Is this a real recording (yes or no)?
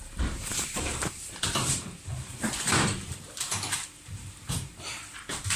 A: no